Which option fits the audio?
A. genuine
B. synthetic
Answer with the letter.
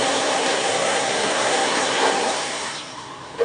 B